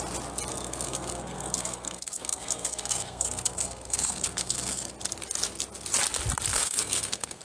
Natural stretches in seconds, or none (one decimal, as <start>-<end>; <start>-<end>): 0.0-0.5; 4.9-6.5